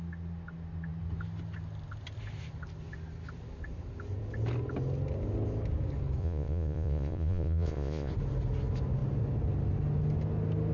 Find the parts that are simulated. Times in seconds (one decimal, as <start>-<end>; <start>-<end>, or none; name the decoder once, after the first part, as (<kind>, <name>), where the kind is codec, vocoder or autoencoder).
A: 6.2-8.1 (vocoder, Vocos)